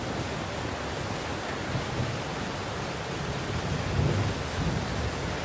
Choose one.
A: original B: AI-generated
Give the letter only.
A